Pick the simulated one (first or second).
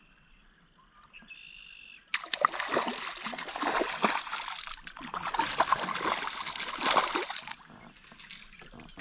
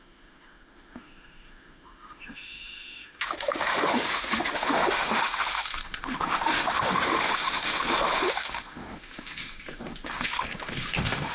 second